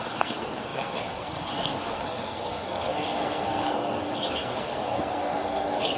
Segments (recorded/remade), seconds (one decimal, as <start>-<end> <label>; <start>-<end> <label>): 0.0-6.0 remade